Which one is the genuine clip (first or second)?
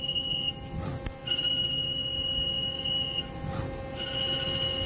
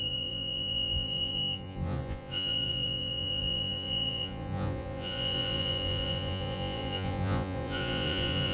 first